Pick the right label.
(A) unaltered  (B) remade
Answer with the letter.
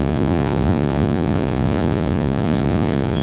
B